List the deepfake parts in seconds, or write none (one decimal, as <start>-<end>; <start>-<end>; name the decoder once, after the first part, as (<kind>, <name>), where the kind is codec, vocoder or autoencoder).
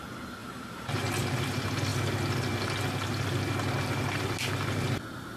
0.4-1.4 (vocoder, BigVGAN v2)